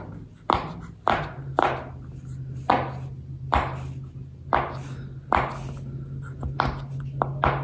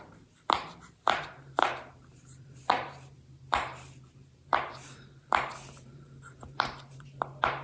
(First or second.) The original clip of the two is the first